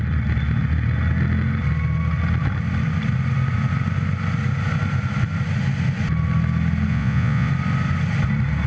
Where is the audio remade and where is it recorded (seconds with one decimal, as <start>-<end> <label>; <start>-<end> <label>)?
0.0-6.9 recorded; 6.9-7.5 remade; 7.5-8.7 recorded